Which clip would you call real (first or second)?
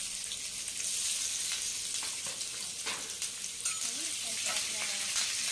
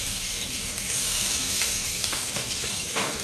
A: first